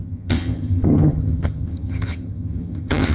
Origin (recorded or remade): remade